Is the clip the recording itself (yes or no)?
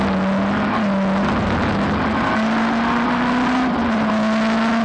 yes